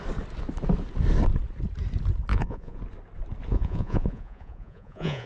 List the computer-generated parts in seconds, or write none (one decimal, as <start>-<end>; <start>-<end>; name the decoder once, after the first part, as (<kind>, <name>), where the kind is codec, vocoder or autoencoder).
2.3-2.8 (vocoder, Vocos); 3.5-5.3